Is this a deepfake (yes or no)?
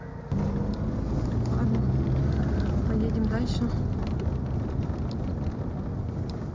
no